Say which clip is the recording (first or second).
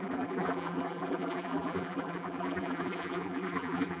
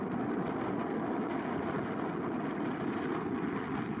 second